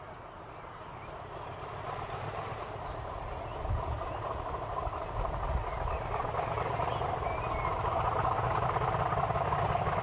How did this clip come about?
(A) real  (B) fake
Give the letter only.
A